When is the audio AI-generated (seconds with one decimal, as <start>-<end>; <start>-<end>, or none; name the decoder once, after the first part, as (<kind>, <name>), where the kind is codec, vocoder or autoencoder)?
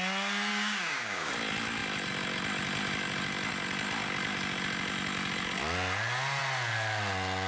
0.5-1.3 (codec, DAC)